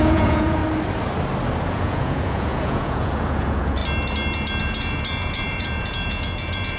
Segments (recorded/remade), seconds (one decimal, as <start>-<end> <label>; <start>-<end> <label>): 0.0-0.6 remade; 0.6-1.7 recorded; 1.7-3.8 remade; 3.8-4.6 recorded; 4.6-6.8 remade